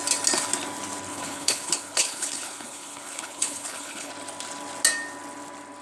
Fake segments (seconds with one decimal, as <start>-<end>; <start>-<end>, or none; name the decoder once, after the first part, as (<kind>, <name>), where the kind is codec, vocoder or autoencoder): 1.1-4.1 (codec, HILCodec)